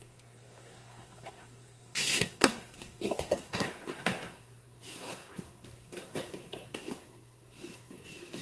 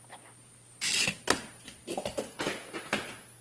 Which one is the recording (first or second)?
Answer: second